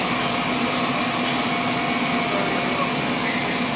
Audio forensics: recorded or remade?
recorded